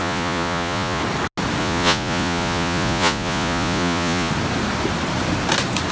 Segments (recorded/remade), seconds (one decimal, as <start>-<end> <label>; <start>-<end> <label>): 0.0-1.0 remade; 1.0-1.6 recorded; 1.6-4.3 remade; 4.3-5.9 recorded